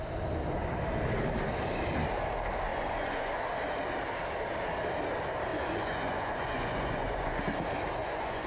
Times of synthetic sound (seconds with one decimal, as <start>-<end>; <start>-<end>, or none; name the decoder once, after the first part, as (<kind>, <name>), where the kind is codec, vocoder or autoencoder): 2.7-3.3 (vocoder, Vocos); 5.5-7.4; 8.0-8.5